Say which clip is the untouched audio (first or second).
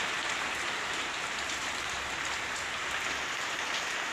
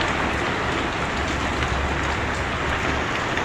second